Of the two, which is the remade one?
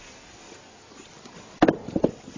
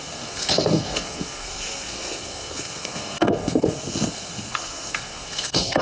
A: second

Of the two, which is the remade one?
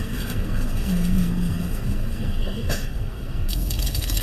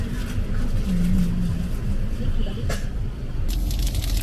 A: first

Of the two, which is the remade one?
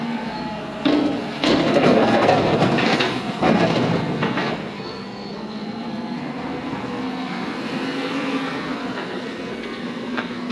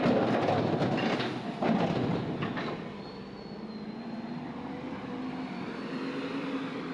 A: first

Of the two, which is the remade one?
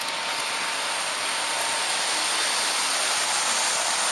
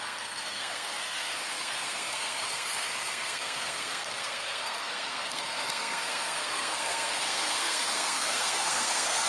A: second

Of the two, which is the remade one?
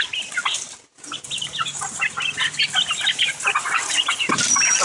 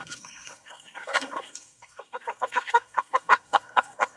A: second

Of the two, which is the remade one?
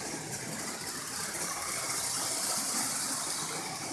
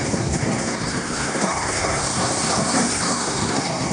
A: second